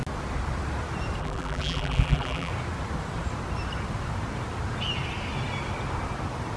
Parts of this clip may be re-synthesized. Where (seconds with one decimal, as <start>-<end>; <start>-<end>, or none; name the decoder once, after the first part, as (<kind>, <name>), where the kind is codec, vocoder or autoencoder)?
1.2-2.5 (vocoder, BigVGAN v2)